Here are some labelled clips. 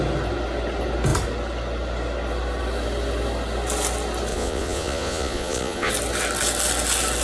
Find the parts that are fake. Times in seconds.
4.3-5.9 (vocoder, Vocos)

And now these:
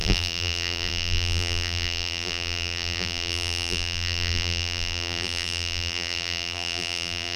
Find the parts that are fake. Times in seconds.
0.0-7.4 (vocoder, BigVGAN v2)